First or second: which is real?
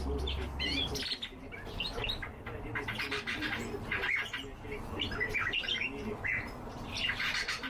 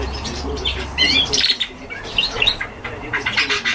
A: first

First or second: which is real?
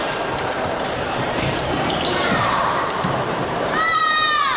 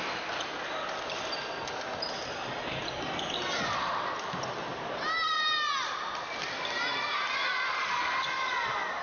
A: second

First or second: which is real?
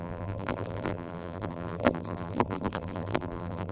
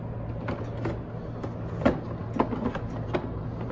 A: second